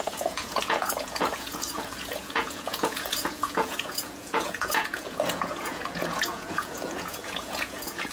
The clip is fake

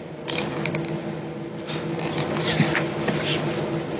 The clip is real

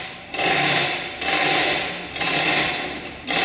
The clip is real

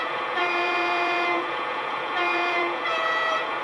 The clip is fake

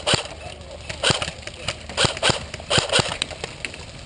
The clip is real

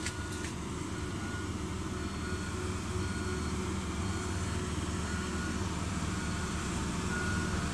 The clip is real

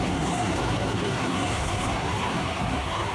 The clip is fake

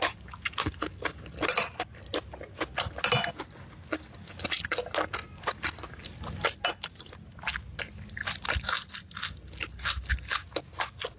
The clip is real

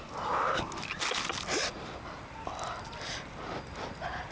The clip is real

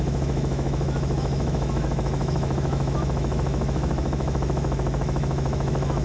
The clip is fake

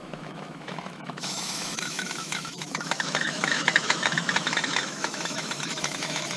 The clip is fake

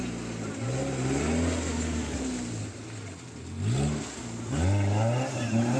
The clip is real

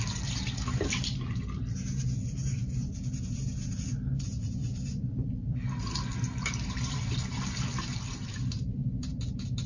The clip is fake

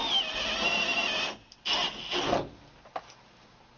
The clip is real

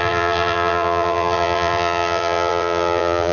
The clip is fake